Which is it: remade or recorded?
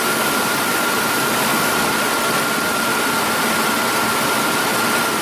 recorded